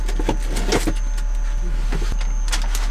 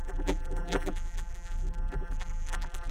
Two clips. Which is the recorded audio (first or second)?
first